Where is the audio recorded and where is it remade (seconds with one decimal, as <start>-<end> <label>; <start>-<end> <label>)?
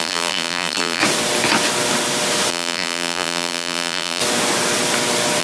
0.0-1.0 remade; 1.0-2.5 recorded; 2.5-4.2 remade; 4.2-5.4 recorded